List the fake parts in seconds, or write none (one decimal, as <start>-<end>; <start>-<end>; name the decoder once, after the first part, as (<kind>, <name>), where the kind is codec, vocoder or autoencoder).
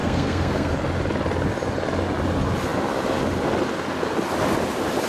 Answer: 0.0-0.7 (codec, SNAC)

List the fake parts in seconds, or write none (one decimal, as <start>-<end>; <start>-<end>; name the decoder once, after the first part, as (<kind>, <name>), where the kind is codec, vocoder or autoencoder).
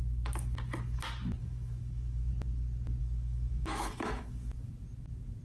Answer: 1.4-2.3 (autoencoder, DAC-VAE); 3.0-4.7